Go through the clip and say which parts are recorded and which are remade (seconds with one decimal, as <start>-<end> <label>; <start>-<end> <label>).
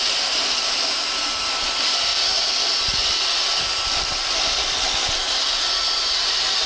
0.0-2.1 remade; 2.1-6.1 recorded; 6.1-6.7 remade